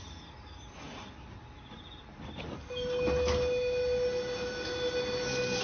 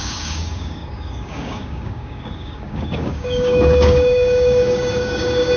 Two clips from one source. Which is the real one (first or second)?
first